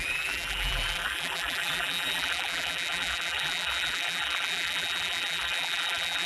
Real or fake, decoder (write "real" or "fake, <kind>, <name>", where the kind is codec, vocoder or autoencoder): fake, vocoder, BigVGAN v2